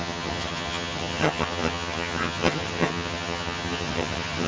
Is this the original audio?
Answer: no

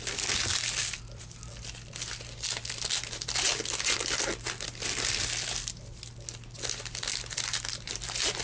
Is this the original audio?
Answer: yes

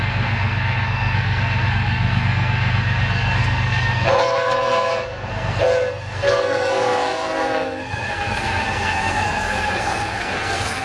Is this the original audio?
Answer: no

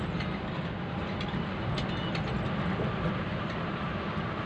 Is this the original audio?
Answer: yes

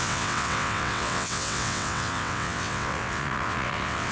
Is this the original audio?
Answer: no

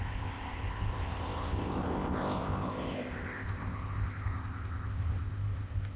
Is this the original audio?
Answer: no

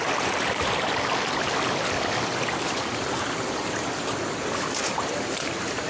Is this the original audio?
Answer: yes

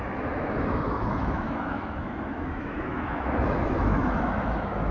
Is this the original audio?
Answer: no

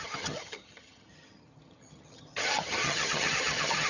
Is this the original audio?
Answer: no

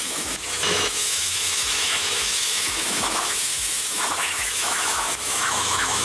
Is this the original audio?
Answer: no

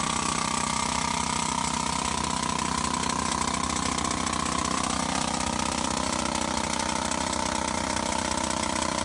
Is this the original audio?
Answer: yes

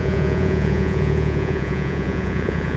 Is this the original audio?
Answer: no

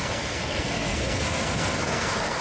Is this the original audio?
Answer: no